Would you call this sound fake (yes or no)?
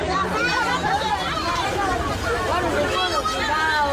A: no